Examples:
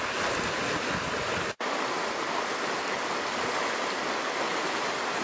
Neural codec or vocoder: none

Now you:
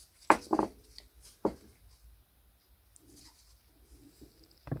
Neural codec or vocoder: none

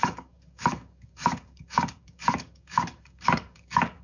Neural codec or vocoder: codec, DAC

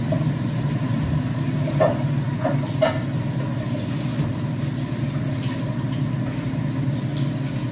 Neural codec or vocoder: none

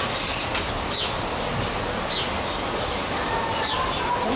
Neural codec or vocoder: none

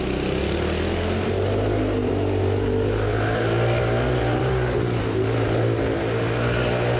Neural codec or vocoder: none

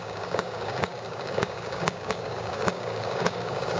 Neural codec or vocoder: codec, DAC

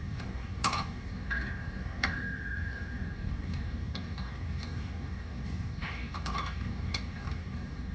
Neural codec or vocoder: codec, DAC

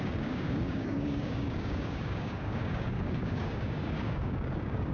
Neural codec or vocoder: codec, DAC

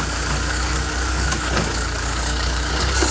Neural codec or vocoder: codec, DAC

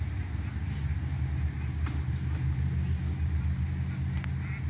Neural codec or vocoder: none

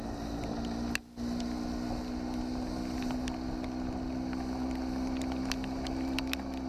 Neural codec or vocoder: none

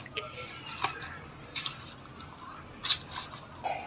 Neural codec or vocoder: none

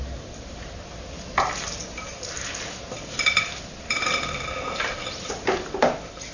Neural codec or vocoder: none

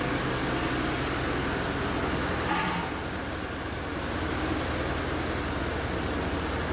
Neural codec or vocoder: none